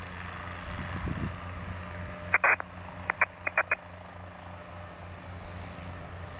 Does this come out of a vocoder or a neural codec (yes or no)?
no